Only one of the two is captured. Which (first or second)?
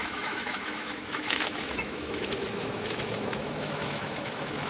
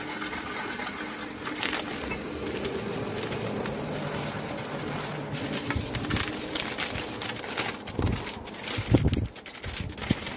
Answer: second